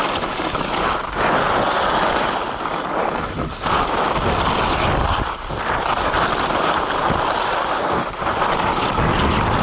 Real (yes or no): yes